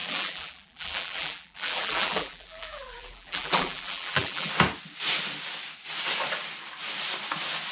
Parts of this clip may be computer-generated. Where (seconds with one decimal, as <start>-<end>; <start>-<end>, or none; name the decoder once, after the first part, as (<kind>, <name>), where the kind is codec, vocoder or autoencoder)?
0.0-4.5 (vocoder, BigVGAN v2)